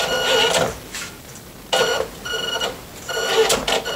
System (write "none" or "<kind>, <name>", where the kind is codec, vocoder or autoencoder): none